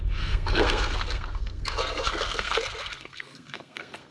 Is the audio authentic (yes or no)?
no